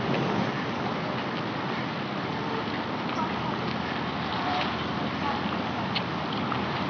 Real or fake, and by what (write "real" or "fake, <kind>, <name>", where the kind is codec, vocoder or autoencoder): real